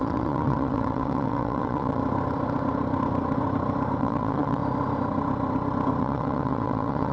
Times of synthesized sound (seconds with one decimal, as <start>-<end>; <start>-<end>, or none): 0.0-2.0; 4.0-4.6; 6.0-7.1